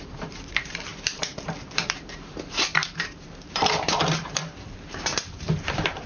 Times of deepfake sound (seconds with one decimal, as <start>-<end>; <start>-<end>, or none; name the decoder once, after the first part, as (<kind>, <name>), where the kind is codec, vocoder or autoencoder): 0.0-6.1 (vocoder, BigVGAN v2)

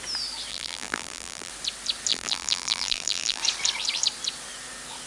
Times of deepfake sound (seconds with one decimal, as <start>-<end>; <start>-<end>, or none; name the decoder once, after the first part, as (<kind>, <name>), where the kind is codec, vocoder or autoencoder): 0.5-1.5 (vocoder, BigVGAN v2); 2.1-3.4

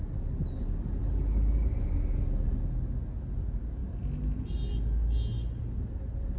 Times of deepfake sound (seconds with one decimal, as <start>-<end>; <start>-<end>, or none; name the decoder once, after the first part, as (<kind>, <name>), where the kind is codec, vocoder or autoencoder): none

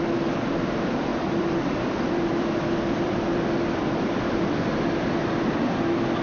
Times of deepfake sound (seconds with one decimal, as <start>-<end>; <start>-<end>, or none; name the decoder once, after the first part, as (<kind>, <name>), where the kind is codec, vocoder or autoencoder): 1.1-4.8 (vocoder, BigVGAN v2)